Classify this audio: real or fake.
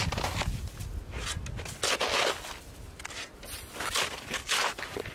real